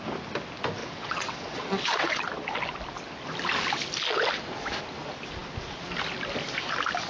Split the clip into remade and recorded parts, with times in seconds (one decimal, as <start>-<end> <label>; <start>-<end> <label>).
0.0-0.8 recorded; 0.8-2.2 remade; 2.2-7.1 recorded